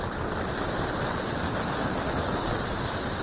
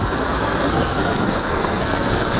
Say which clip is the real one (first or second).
first